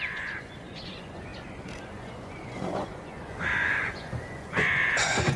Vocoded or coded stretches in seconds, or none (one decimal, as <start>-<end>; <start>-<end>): 0.0-5.4